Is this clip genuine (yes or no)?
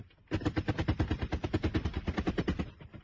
no